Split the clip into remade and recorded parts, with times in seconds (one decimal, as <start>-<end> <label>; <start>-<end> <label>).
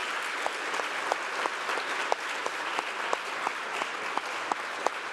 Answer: 0.0-5.1 recorded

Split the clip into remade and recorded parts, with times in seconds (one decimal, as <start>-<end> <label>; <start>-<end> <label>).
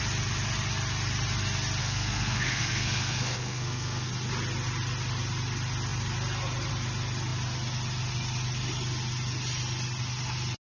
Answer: 0.0-1.8 recorded; 1.8-4.1 remade; 4.1-10.7 recorded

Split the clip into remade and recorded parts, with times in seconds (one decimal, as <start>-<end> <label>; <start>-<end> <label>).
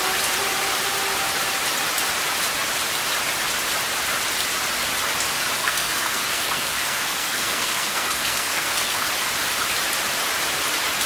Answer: 0.0-5.6 recorded; 5.6-9.1 remade; 9.1-11.1 recorded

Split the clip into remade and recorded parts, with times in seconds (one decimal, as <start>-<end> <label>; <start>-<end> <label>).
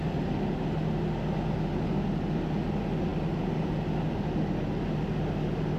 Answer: 0.0-5.8 recorded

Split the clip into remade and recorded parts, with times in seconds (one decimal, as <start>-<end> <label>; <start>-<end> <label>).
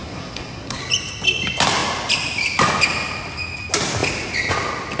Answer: 0.0-0.8 remade; 0.8-5.0 recorded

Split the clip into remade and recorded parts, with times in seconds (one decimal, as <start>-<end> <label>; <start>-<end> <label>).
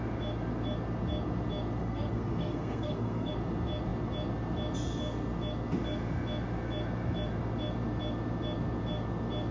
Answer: 0.0-1.8 recorded; 1.8-3.3 remade; 3.3-9.5 recorded